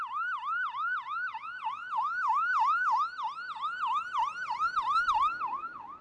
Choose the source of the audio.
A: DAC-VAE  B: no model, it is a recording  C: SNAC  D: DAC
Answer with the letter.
B